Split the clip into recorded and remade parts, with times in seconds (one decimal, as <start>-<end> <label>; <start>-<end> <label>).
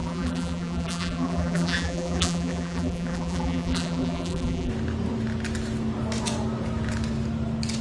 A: 0.0-4.7 remade; 4.7-7.8 recorded